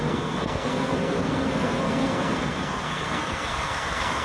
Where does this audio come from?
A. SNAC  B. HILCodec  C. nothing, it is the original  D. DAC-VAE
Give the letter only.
A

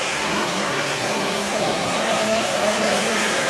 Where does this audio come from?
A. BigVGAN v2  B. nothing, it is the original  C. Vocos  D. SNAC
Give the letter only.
D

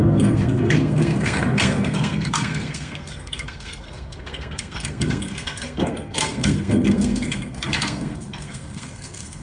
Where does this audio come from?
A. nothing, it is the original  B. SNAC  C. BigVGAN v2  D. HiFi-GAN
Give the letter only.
B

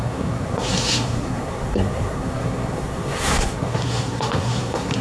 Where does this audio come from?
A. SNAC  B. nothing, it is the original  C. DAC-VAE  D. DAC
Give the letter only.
A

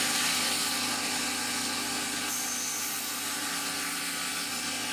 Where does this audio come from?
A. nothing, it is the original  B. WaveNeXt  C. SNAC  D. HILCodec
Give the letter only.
A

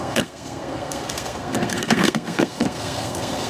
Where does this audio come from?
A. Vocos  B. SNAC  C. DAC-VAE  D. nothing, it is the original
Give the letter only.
B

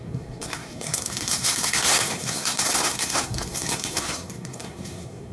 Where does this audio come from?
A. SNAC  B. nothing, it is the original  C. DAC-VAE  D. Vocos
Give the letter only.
A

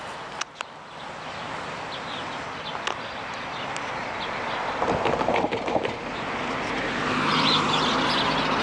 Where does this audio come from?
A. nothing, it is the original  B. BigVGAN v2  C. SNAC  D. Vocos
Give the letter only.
A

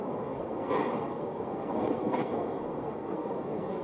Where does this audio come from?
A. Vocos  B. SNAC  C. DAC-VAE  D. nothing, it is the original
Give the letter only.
B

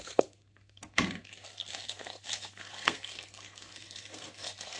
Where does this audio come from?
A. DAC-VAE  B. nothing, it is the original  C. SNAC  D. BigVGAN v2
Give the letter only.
C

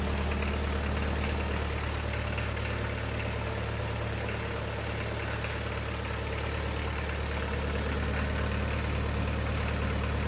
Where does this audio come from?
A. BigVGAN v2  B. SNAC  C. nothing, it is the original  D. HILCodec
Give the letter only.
C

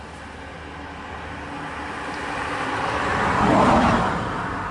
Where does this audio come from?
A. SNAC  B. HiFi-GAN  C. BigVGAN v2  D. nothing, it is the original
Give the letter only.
D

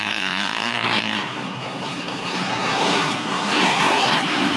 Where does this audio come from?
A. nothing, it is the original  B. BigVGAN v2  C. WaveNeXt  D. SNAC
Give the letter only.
D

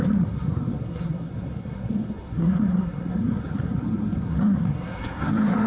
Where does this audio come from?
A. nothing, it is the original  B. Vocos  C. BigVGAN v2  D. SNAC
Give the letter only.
D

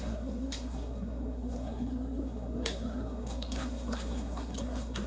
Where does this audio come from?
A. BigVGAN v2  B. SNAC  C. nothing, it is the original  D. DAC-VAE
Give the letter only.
B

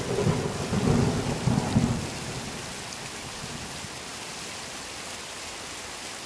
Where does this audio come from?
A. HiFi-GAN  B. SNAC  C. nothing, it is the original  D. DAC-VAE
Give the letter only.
C